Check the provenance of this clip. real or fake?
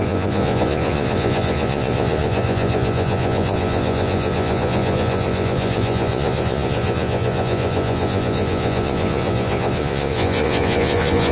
fake